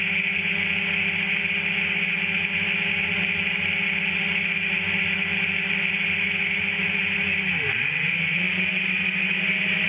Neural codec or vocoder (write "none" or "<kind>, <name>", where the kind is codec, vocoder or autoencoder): none